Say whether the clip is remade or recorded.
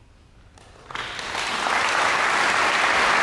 recorded